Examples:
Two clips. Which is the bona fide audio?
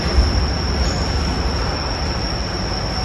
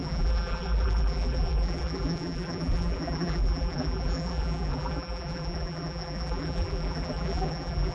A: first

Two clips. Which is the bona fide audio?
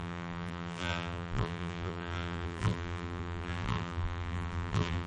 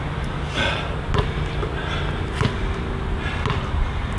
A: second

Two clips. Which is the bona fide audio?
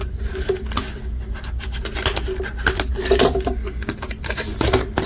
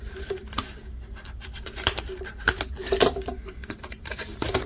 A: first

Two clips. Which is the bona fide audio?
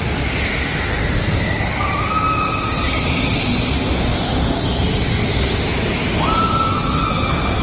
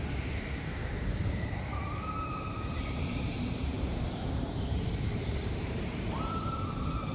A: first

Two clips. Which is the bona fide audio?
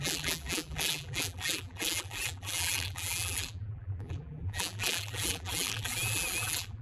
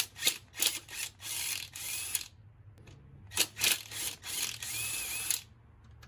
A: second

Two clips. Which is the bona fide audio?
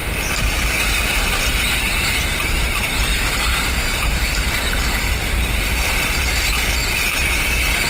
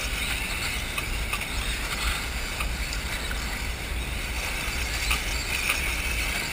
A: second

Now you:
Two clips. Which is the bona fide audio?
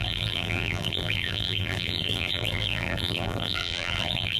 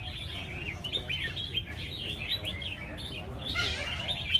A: second